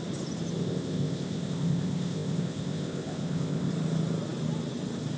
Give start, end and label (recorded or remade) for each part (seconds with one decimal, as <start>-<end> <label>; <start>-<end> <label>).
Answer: 0.0-0.6 recorded; 0.6-3.7 remade; 3.7-5.2 recorded